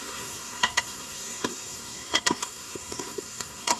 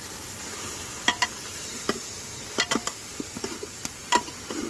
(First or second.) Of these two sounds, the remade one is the first